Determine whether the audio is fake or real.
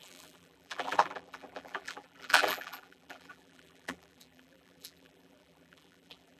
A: fake